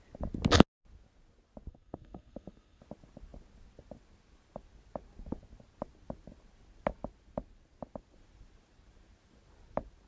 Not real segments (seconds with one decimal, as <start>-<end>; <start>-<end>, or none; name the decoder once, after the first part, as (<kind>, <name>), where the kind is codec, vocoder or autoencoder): 1.7-2.8 (codec, SNAC)